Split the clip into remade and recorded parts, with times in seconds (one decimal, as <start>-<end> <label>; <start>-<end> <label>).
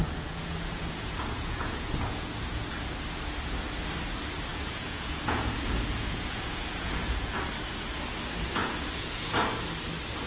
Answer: 0.0-2.6 remade; 2.6-4.5 recorded; 4.5-7.5 remade; 7.5-8.6 recorded; 8.6-9.3 remade; 9.3-10.3 recorded